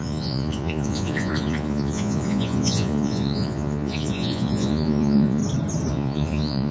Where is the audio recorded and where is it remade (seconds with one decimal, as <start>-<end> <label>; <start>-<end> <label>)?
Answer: 0.0-5.4 remade; 5.4-5.9 recorded; 5.9-6.7 remade